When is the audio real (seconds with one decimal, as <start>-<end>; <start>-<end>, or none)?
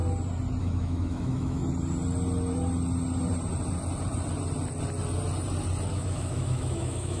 0.0-0.6; 1.6-5.9